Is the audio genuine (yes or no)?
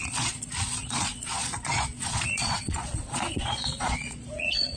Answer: no